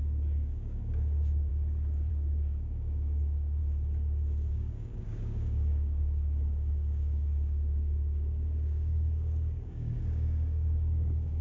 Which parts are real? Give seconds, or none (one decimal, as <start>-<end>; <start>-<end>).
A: 1.5-2.1; 3.6-4.5